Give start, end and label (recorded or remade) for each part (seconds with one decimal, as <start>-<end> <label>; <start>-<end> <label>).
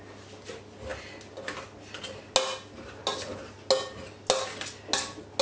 0.0-5.4 recorded